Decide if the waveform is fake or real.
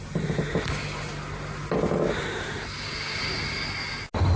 real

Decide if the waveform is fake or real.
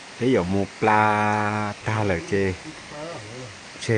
fake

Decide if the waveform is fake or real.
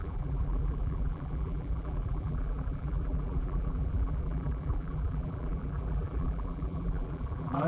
fake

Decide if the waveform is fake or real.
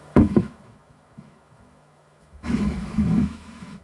fake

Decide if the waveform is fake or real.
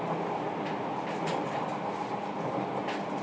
real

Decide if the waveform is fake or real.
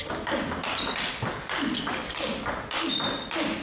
real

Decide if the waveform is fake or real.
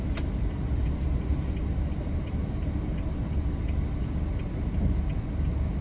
real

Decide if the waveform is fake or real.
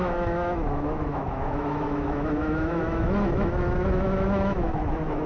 fake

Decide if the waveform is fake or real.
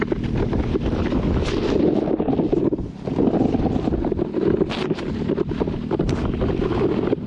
real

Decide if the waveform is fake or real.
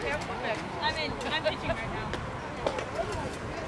real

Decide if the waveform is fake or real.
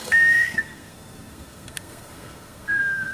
fake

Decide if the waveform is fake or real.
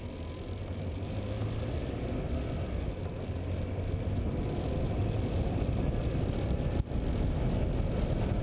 real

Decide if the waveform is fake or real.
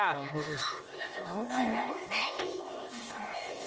fake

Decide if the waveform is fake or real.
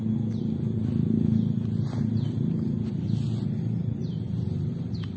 real